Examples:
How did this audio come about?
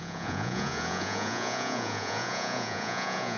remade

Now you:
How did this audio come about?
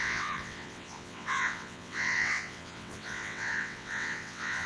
remade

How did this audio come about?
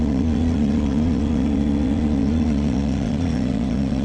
remade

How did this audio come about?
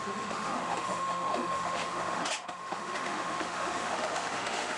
remade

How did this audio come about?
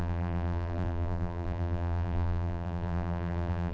remade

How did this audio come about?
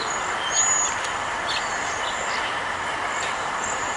recorded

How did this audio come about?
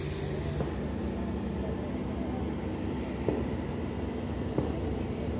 recorded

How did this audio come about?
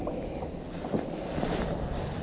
recorded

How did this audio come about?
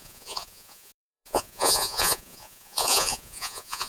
remade